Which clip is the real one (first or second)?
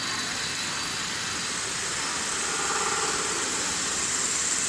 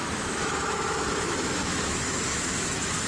first